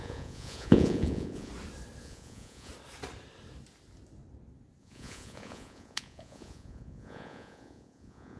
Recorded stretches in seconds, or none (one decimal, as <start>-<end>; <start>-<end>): 1.5-2.0; 2.7-4.8